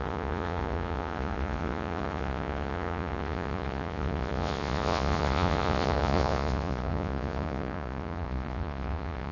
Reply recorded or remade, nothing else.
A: remade